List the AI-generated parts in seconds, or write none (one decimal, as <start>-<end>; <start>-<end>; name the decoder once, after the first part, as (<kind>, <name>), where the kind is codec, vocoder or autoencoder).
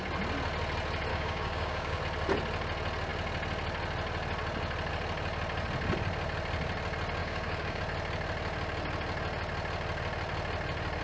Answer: 1.1-2.0 (codec, DAC); 7.2-7.8